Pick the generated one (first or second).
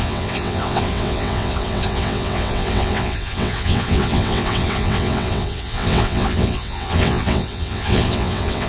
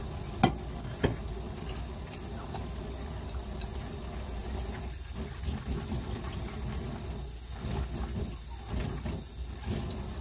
first